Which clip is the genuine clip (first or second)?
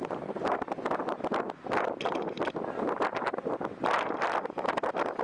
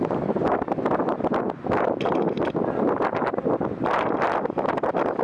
second